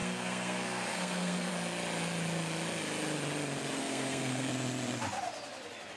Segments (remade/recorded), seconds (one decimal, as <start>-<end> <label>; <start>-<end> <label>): 0.0-1.5 remade; 1.5-3.8 recorded; 3.8-4.5 remade; 4.5-6.0 recorded